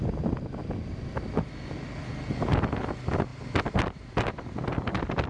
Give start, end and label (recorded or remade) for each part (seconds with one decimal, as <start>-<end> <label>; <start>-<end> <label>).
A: 0.0-5.3 recorded